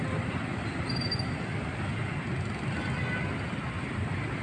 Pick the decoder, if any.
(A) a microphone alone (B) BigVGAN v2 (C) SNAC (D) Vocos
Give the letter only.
A